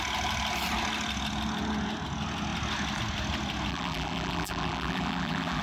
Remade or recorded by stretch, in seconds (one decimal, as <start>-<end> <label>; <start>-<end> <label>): 0.0-3.7 recorded; 3.7-5.6 remade